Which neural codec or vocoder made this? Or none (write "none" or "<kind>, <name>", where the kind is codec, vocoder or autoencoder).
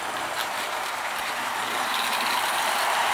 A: vocoder, BigVGAN v2